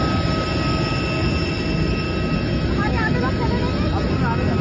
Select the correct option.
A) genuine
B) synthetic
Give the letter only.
A